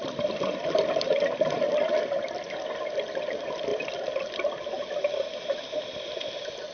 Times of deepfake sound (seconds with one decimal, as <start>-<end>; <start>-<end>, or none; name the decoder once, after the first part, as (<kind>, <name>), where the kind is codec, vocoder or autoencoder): 0.0-3.7 (vocoder, BigVGAN v2); 5.7-6.7